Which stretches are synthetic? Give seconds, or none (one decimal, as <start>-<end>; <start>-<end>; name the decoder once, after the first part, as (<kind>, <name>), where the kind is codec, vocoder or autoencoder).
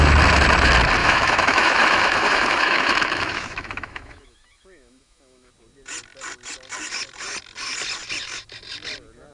1.0-5.5 (autoencoder, DAC-VAE)